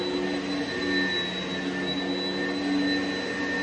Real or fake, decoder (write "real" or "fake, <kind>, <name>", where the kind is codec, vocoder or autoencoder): real